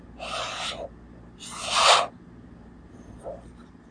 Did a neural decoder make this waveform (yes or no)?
no